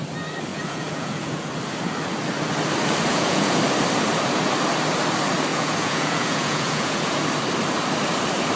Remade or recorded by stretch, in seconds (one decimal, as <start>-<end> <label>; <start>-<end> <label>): 0.0-0.5 recorded; 0.5-1.5 remade; 1.5-3.1 recorded; 3.1-3.6 remade; 3.6-5.5 recorded; 5.5-7.2 remade; 7.2-8.6 recorded